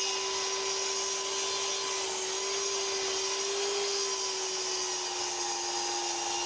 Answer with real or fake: real